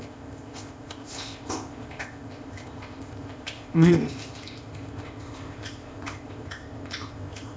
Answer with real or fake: fake